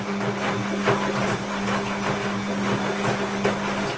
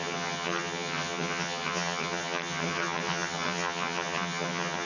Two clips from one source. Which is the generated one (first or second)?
second